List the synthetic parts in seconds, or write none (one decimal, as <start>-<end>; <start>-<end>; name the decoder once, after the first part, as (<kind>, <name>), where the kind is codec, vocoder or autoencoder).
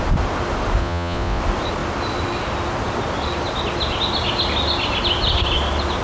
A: 0.8-1.4 (vocoder, Vocos)